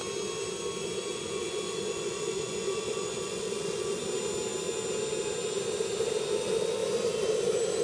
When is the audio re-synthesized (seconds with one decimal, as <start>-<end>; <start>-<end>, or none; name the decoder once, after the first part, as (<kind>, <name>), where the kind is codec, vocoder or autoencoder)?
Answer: 1.1-4.0 (vocoder, Vocos)